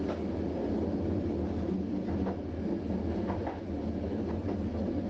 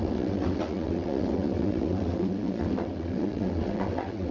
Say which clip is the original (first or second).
first